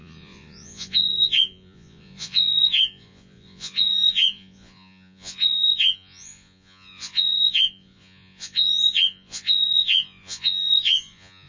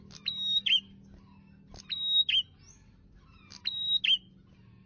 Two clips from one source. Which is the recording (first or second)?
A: second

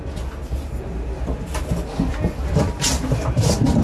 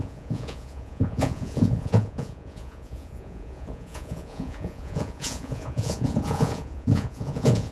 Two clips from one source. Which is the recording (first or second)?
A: first